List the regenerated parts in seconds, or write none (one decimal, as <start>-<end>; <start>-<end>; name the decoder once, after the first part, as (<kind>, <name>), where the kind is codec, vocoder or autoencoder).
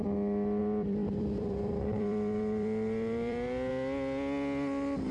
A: 0.6-3.7 (vocoder, BigVGAN v2)